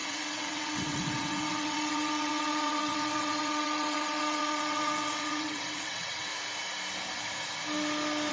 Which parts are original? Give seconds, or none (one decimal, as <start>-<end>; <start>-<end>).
6.3-8.3